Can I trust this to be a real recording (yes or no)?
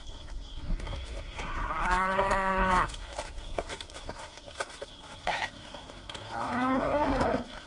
no